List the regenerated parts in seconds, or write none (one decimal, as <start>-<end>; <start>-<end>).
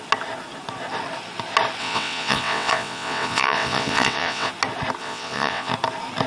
1.8-4.5; 5.0-5.7